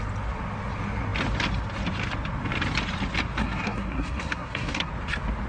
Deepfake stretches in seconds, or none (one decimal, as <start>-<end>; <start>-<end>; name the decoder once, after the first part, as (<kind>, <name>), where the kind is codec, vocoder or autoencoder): 3.4-4.9 (codec, SNAC)